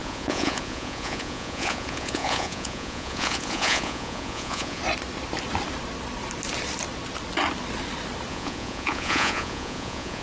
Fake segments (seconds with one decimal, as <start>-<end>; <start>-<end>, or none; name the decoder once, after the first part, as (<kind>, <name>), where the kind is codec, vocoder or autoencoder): 0.0-4.8 (vocoder, Vocos); 8.3-10.2